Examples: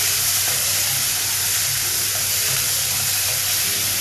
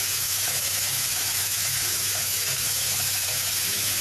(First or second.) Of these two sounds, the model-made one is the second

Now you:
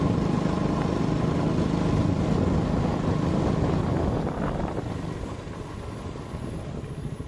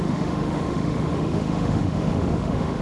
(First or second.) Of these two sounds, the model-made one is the second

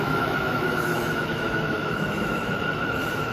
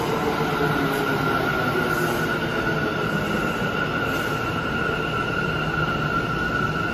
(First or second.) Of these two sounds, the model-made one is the first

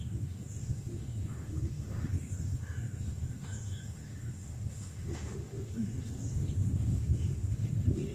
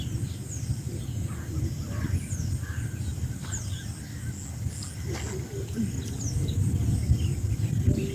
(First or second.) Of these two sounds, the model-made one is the first